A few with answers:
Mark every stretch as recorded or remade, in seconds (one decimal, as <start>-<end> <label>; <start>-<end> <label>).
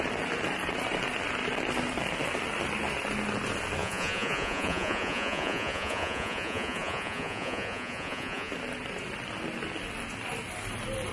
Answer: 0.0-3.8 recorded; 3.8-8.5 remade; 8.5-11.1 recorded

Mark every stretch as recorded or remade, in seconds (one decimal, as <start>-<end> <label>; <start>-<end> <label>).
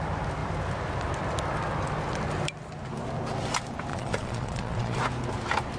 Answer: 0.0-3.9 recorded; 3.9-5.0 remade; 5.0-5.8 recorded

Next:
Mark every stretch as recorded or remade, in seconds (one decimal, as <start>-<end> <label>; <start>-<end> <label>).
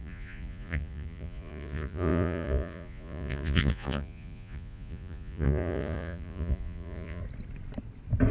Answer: 0.0-7.2 remade; 7.2-8.3 recorded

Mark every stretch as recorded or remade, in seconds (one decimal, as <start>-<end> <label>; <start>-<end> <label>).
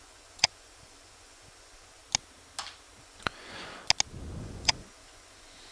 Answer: 0.0-2.0 remade; 2.0-3.0 recorded; 3.0-3.8 remade; 3.8-4.4 recorded; 4.4-5.7 remade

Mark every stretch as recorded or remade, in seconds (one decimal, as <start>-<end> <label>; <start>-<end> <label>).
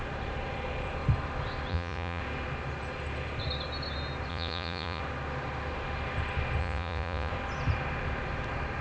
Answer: 0.0-1.7 recorded; 1.7-2.2 remade; 2.2-4.3 recorded; 4.3-5.0 remade; 5.0-6.6 recorded; 6.6-7.3 remade; 7.3-8.8 recorded